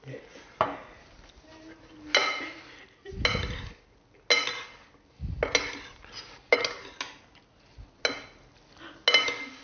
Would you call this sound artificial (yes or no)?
no